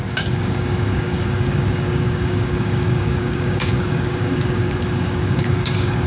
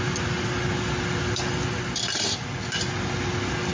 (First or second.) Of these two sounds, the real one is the second